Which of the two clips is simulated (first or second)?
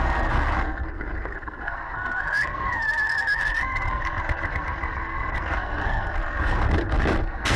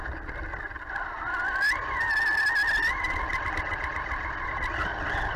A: first